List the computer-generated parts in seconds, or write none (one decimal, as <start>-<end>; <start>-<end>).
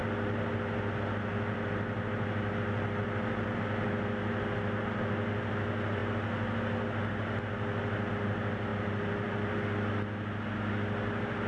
none